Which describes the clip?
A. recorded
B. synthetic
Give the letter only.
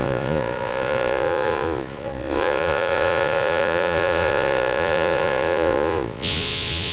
B